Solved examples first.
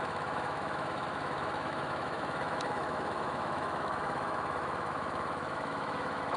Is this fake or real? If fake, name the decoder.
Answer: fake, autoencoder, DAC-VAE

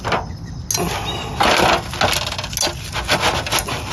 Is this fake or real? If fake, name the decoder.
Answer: real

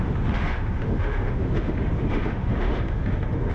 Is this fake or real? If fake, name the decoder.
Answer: fake, autoencoder, DAC-VAE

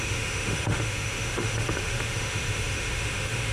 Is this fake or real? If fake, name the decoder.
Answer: fake, autoencoder, DAC-VAE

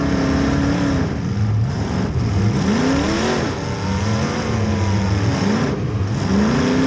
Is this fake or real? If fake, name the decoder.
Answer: real